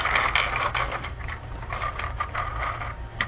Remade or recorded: recorded